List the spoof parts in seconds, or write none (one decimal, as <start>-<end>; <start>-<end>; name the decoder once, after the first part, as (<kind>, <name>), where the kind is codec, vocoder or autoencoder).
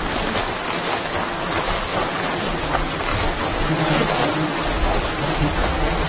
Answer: 1.9-2.6 (vocoder, BigVGAN v2); 3.1-3.7; 4.2-6.1